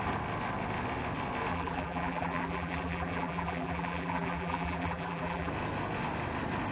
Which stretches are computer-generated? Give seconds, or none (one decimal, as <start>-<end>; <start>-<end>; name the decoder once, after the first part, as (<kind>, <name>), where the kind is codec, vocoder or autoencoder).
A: 1.5-5.5 (vocoder, BigVGAN v2)